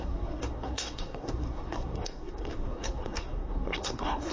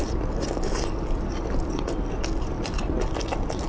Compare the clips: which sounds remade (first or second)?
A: first